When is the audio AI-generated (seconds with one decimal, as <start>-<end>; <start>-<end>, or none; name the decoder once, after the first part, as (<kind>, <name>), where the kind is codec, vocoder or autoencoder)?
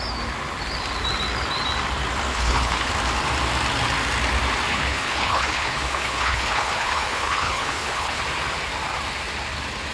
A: 2.3-2.9 (codec, HILCodec); 4.7-8.2